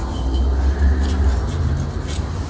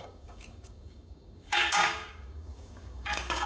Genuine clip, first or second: first